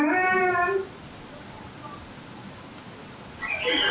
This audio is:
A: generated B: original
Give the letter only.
B